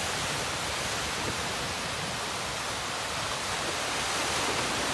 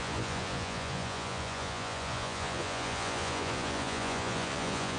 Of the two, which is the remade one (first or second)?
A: second